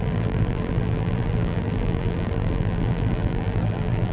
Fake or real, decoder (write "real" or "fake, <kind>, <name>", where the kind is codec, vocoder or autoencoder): fake, vocoder, BigVGAN v2